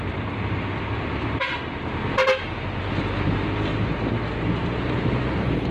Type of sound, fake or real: real